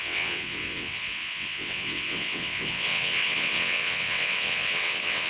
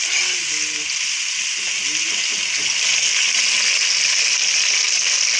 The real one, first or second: second